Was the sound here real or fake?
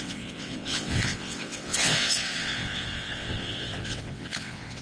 fake